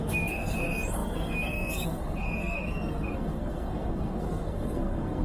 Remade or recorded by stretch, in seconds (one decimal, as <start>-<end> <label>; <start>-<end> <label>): 0.0-5.2 remade